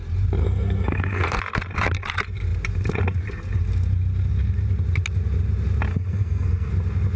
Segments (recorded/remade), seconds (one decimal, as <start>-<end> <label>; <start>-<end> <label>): 0.0-0.4 recorded; 0.4-1.4 remade; 1.4-5.9 recorded; 5.9-6.7 remade; 6.7-7.2 recorded